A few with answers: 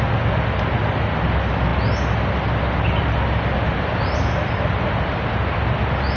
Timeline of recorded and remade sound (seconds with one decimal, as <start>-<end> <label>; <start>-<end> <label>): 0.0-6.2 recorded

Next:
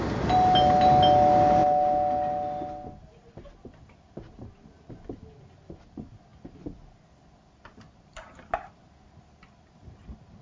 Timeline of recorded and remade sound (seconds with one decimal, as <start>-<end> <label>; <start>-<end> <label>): 0.0-10.4 recorded

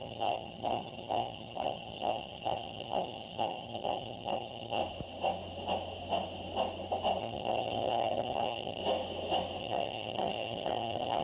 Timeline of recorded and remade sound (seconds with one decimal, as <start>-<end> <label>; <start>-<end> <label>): 0.0-4.8 remade; 4.8-7.2 recorded; 7.2-8.8 remade; 8.8-9.6 recorded; 9.6-11.2 remade

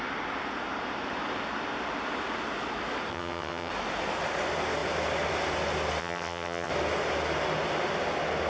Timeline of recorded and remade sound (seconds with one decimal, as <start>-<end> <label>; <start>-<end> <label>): 0.0-3.1 recorded; 3.1-3.7 remade; 3.7-6.0 recorded; 6.0-6.7 remade; 6.7-8.5 recorded

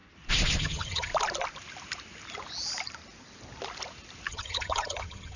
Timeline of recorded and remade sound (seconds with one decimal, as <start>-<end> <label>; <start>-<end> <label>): 0.0-0.6 recorded; 0.6-1.1 remade; 1.1-4.3 recorded; 4.3-5.4 remade

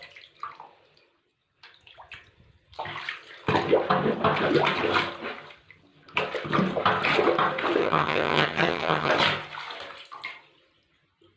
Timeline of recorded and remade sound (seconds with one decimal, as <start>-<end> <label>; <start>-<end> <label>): 0.0-7.8 recorded; 7.8-9.1 remade; 9.1-11.4 recorded